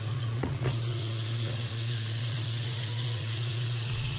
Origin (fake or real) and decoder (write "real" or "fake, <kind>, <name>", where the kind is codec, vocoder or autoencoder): fake, vocoder, Vocos